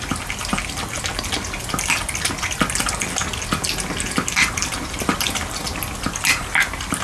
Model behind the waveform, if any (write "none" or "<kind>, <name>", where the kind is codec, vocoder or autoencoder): none